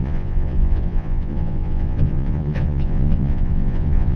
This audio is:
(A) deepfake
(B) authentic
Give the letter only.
A